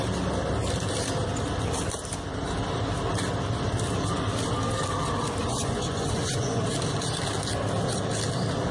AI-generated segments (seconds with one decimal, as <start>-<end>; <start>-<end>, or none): 5.4-6.6